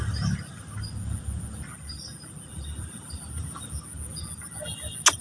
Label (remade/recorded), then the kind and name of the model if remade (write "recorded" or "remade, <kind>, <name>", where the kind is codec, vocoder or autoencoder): recorded